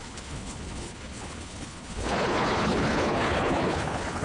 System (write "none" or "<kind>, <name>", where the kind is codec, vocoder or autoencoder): codec, HILCodec